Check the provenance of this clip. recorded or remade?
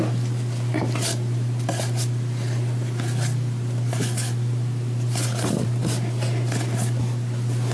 recorded